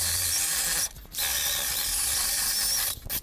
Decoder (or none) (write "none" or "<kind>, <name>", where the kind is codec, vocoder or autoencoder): none